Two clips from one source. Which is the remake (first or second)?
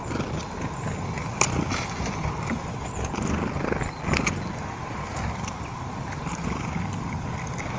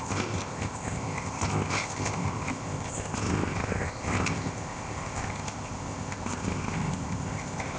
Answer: second